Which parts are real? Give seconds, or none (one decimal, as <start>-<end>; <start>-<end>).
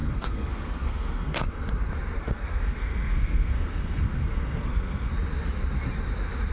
1.6-2.2; 5.1-6.5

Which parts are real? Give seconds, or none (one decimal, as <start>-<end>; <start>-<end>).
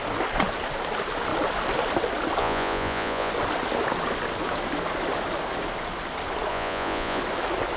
0.0-2.4; 3.3-6.5; 7.2-7.8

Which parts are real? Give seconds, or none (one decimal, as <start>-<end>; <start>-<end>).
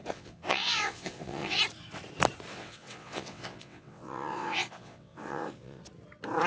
1.6-2.5; 5.8-6.5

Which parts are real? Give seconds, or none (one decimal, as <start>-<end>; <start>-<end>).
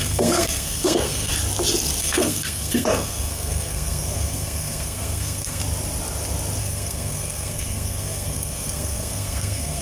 1.3-2.0; 5.6-6.6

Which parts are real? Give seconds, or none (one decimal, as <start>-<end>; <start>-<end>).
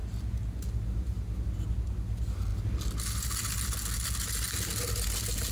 0.0-5.5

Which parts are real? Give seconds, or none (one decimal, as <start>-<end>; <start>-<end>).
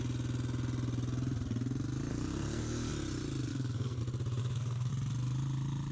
0.0-2.1; 2.9-3.5; 4.0-4.4; 4.9-5.9